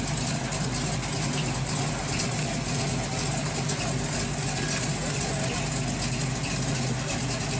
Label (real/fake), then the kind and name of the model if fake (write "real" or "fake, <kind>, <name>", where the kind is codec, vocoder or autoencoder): real